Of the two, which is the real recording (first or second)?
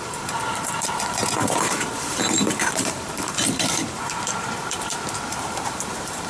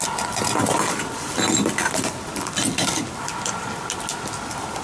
second